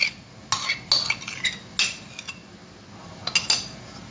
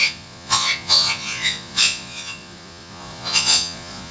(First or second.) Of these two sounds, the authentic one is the first